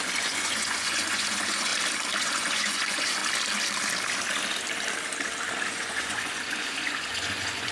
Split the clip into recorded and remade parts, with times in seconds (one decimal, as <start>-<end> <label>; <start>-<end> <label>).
0.0-1.7 remade; 1.7-2.2 recorded; 2.2-3.2 remade; 3.2-5.7 recorded; 5.7-7.7 remade